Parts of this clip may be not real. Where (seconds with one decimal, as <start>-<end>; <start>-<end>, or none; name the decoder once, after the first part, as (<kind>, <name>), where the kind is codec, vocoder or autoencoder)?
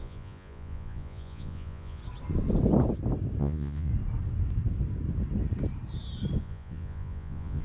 0.0-2.0 (vocoder, Vocos); 3.4-3.9; 6.4-7.6